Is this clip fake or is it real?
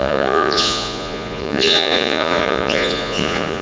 fake